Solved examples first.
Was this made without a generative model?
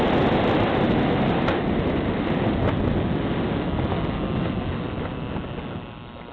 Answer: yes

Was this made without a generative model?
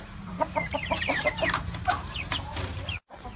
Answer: no